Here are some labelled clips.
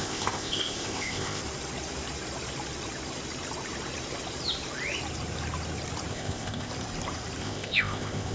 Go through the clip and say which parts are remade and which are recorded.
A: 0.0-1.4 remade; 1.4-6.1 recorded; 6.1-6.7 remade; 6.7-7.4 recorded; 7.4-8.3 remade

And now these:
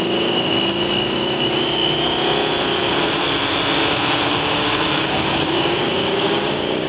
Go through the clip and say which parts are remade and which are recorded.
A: 0.0-1.8 remade; 1.8-4.3 recorded; 4.3-6.9 remade

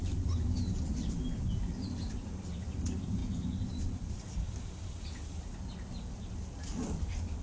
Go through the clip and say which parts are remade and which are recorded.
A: 0.0-7.4 recorded